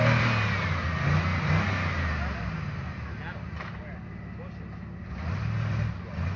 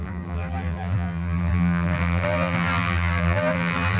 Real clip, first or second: first